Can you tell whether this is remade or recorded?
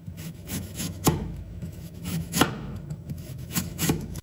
remade